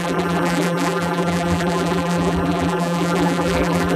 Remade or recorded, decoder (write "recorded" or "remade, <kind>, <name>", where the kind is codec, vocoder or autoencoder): remade, vocoder, BigVGAN v2